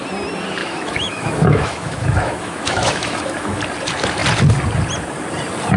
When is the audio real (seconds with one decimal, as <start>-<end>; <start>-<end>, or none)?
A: 0.0-0.6; 3.6-5.8